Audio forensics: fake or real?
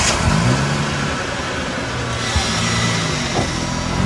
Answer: real